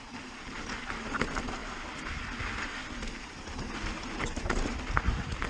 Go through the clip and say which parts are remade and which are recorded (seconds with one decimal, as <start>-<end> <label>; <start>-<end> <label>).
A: 0.0-5.5 recorded